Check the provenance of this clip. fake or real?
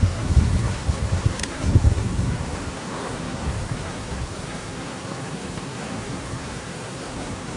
fake